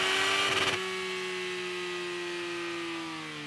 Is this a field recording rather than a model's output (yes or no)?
yes